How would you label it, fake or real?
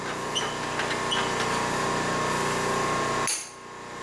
real